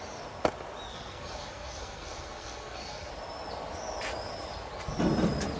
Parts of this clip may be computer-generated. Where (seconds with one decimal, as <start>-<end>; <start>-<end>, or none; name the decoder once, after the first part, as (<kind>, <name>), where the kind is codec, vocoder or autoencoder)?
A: 0.9-3.1 (codec, SNAC)